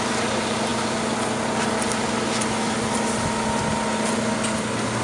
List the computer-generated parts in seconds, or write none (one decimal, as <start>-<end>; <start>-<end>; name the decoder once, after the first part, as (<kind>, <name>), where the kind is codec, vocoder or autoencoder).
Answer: none